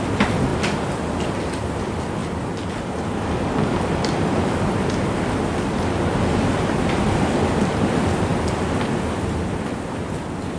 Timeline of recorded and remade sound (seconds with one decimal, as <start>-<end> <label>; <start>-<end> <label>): 0.0-0.5 remade; 0.5-1.8 recorded; 1.8-2.2 remade; 2.2-2.7 recorded; 2.7-10.6 remade